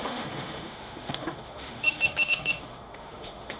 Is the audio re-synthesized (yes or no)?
yes